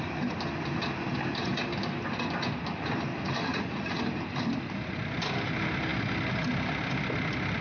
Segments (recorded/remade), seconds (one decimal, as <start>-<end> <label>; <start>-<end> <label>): 0.0-3.5 recorded; 3.5-4.0 remade; 4.0-7.6 recorded